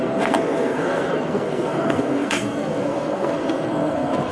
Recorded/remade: remade